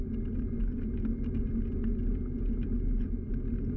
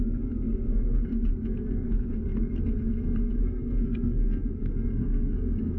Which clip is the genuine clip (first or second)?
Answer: first